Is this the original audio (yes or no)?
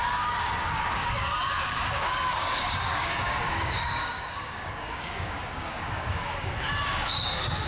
no